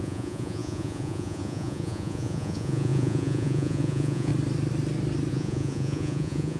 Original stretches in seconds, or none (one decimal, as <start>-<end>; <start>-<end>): 4.3-5.3